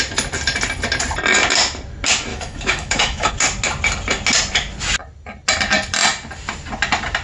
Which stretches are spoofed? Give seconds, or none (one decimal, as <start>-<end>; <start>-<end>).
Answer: 2.3-3.3